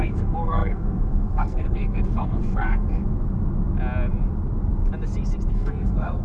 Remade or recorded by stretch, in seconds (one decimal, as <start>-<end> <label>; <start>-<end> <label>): 0.0-3.0 remade; 3.0-5.5 recorded; 5.5-6.2 remade